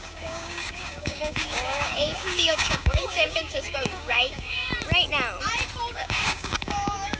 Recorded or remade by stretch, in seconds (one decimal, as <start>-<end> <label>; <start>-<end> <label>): 0.0-4.7 remade; 4.7-5.9 recorded; 5.9-7.2 remade